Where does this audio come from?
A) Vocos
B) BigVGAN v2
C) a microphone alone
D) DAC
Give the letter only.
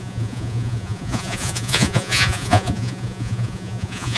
A